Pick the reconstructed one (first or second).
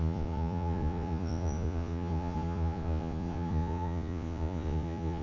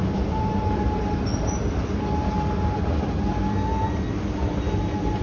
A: first